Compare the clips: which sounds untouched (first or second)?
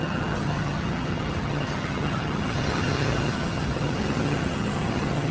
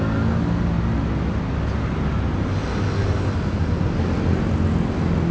second